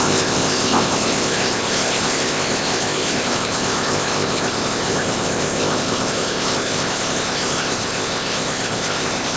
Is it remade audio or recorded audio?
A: remade